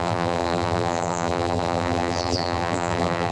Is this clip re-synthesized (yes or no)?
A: yes